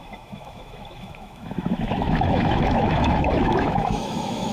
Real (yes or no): no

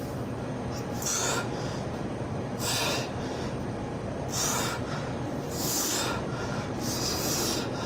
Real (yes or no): yes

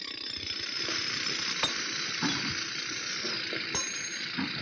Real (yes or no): yes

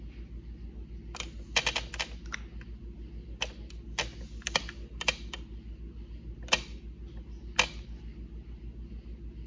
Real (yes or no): yes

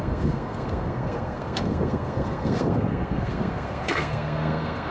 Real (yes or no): no